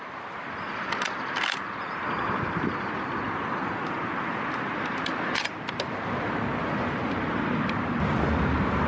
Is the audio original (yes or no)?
yes